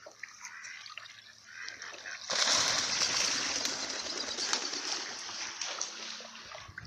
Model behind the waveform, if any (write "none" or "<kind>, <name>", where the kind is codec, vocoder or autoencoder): none